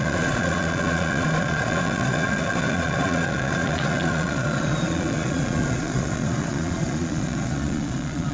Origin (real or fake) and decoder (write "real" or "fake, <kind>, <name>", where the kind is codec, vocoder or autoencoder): fake, vocoder, Vocos